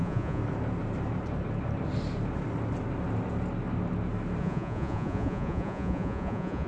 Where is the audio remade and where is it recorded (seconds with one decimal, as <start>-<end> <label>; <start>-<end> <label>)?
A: 0.0-0.4 remade; 0.4-4.4 recorded; 4.4-6.7 remade